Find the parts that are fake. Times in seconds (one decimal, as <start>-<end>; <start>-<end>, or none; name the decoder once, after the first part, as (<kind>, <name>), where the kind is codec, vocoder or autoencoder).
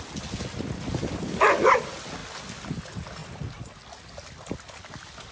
none